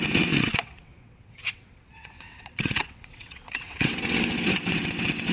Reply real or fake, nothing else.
fake